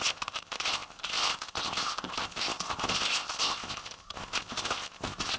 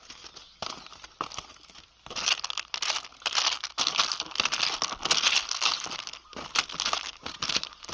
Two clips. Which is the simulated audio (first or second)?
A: first